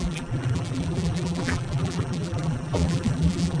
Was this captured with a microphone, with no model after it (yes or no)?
no